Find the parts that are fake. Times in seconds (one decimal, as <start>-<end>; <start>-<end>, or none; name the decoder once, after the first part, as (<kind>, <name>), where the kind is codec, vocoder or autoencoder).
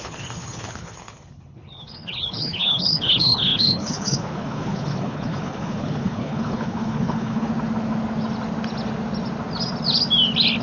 0.0-7.5 (codec, HILCodec)